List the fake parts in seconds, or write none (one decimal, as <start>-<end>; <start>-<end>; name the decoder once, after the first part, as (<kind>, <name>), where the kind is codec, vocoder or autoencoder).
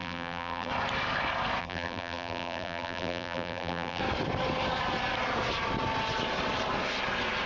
0.0-0.7 (vocoder, BigVGAN v2); 1.6-4.0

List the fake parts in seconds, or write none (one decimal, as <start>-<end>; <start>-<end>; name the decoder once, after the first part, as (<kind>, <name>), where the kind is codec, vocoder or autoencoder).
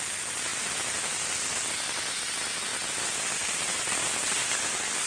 none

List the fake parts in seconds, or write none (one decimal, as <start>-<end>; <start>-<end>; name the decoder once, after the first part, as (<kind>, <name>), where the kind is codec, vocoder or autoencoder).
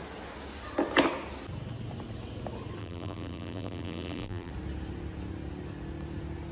2.8-4.5 (vocoder, BigVGAN v2)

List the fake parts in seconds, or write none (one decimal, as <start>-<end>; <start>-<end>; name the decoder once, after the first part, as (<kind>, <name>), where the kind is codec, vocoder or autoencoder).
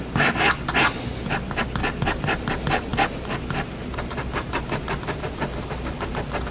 1.8-2.5 (vocoder, BigVGAN v2); 2.9-6.1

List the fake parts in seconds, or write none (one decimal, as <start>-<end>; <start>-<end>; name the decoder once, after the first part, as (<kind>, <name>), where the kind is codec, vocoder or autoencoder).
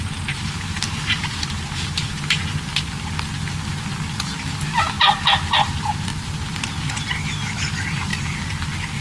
0.0-2.7 (vocoder, BigVGAN v2); 4.7-6.1; 6.8-8.1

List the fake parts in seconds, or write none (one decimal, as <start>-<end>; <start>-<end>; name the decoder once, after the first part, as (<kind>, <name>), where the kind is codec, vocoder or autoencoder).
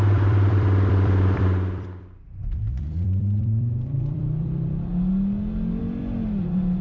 0.0-4.9 (vocoder, BigVGAN v2); 5.8-6.8